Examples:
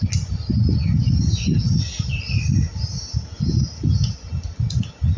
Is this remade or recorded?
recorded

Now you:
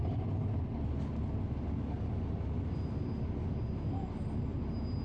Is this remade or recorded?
recorded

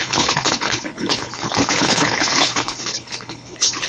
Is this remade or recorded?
remade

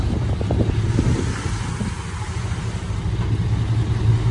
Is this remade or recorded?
recorded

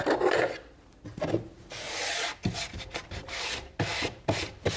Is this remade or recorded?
recorded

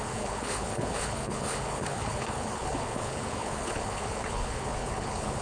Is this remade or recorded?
remade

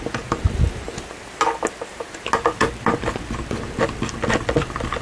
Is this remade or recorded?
recorded